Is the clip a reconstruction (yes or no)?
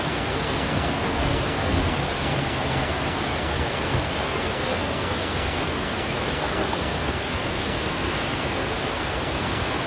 yes